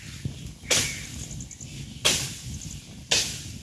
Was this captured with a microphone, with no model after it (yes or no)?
yes